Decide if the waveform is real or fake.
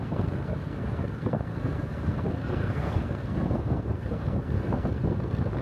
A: fake